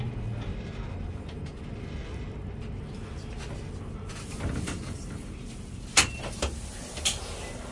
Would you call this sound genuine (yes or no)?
yes